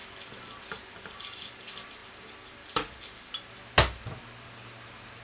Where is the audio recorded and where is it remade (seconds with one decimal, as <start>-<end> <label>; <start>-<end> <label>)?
0.0-5.2 recorded